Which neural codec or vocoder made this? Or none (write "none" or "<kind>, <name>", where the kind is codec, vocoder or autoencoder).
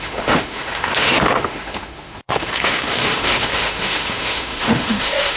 autoencoder, DAC-VAE